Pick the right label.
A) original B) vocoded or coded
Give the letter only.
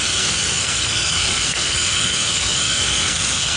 B